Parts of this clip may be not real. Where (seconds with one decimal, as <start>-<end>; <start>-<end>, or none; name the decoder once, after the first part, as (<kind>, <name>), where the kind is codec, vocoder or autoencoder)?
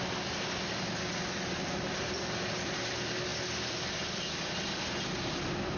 none